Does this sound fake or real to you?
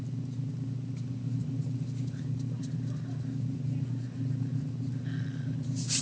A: real